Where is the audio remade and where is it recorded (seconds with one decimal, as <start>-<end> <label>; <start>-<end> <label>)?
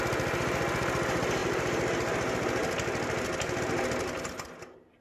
0.0-5.0 recorded